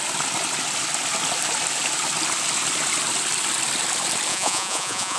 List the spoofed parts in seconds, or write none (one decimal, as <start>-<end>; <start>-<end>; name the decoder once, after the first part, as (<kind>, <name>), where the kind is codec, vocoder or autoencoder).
4.3-5.2 (vocoder, Vocos)